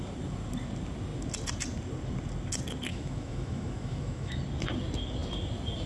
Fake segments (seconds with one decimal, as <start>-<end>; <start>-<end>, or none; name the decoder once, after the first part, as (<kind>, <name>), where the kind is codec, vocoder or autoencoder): 2.9-4.4 (autoencoder, DAC-VAE)